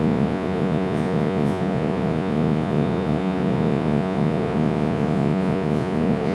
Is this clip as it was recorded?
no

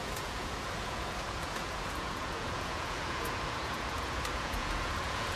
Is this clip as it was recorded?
no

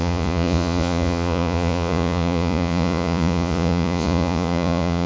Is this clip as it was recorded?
no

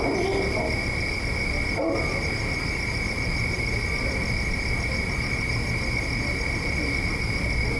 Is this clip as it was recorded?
yes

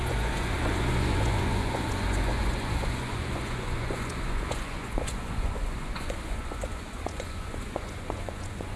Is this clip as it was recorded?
no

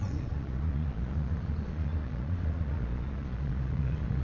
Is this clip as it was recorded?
no